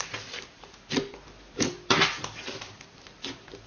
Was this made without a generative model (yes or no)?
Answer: yes